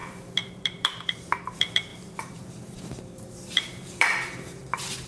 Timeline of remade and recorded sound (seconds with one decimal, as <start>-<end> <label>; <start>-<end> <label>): 0.0-5.1 remade